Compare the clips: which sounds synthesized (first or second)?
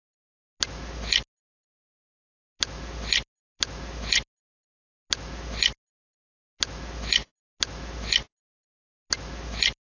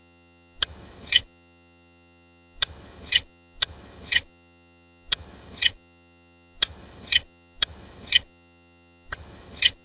second